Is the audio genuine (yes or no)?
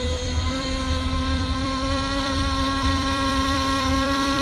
no